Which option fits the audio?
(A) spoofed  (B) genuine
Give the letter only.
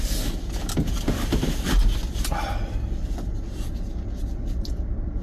A